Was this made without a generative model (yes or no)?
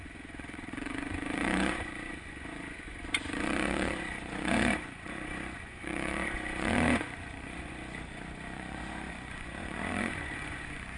no